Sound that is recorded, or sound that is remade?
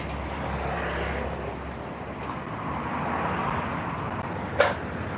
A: recorded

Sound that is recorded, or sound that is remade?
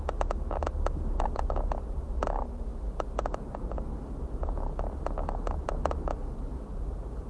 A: recorded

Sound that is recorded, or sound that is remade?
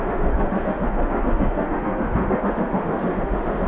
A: remade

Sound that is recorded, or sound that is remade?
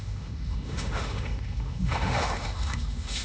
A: remade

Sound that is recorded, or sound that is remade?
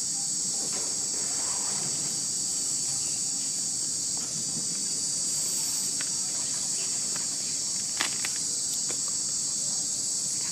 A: recorded